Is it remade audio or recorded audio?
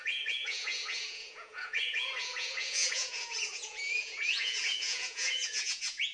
remade